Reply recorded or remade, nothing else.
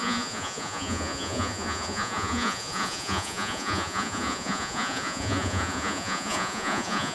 remade